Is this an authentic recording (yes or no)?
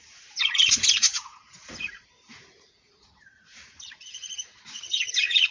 no